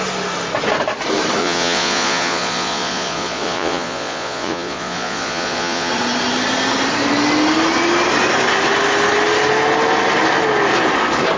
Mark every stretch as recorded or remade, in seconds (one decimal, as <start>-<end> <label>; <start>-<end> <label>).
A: 0.0-1.4 recorded; 1.4-5.9 remade; 5.9-11.4 recorded